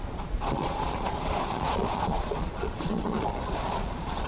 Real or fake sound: fake